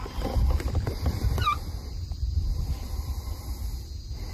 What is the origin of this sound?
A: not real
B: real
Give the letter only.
B